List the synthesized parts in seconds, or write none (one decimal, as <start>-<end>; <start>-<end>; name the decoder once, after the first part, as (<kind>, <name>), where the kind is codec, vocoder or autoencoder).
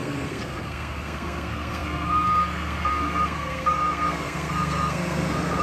0.0-5.6 (codec, SNAC)